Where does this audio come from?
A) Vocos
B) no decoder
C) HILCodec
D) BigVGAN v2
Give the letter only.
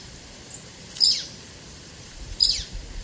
D